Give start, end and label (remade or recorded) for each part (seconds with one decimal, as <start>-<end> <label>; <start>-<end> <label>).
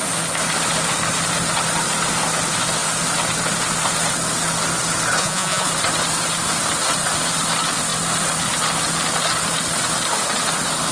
0.0-5.2 recorded; 5.2-5.7 remade; 5.7-10.9 recorded